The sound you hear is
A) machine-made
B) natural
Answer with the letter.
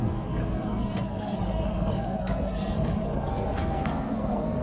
A